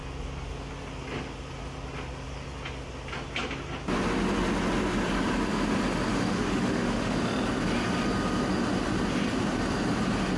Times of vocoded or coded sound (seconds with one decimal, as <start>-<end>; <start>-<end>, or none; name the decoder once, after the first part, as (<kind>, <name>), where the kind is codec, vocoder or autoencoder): 6.1-7.2 (autoencoder, DAC-VAE)